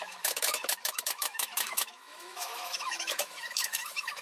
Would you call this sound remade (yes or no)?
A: yes